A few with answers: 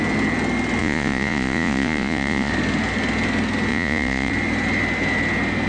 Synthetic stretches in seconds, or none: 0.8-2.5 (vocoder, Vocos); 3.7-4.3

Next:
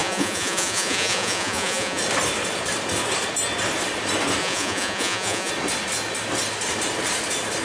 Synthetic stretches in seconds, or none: 0.0-2.0 (vocoder, Vocos); 4.4-5.5